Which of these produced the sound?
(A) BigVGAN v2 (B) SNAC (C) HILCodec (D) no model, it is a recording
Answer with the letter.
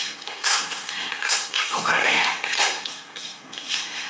B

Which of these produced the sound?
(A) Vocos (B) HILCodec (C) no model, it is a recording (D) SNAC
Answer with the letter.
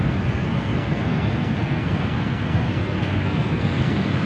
D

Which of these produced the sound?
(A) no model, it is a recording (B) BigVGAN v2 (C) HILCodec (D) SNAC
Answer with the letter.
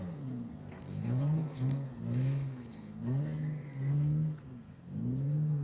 D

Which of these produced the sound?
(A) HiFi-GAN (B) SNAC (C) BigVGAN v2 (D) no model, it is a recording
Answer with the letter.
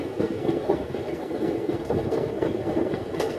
B